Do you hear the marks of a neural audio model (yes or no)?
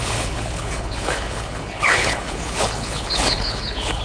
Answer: yes